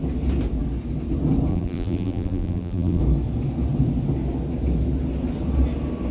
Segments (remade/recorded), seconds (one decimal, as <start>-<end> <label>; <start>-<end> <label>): 0.0-1.5 recorded; 1.5-3.0 remade; 3.0-6.1 recorded